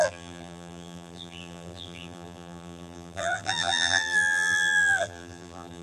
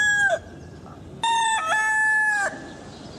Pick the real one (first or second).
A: second